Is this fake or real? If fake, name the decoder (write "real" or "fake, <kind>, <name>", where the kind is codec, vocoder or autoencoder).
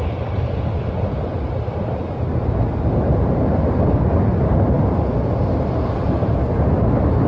real